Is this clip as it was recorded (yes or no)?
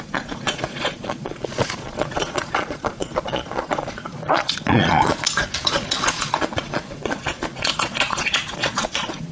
no